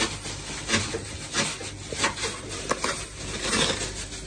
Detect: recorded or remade recorded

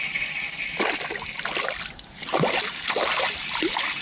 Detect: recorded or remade recorded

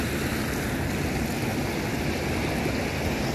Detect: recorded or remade recorded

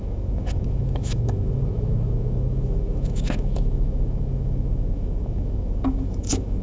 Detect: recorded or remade remade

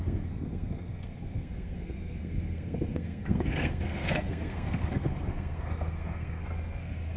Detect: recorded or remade remade